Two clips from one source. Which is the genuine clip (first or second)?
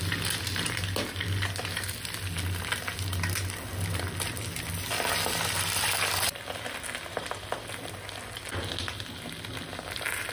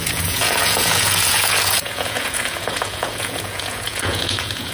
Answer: first